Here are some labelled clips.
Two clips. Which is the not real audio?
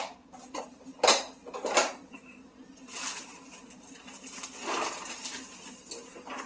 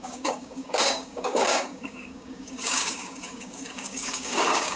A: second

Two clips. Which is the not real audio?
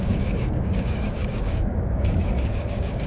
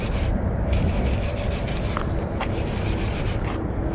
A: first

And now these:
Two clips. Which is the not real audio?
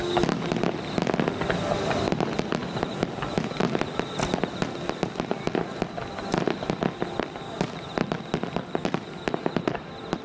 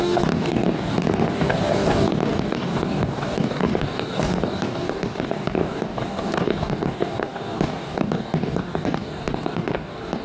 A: second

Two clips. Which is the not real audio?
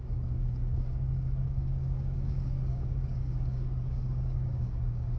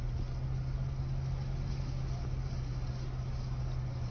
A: first